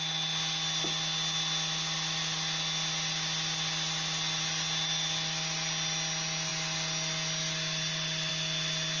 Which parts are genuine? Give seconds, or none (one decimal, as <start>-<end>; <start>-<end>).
0.0-9.0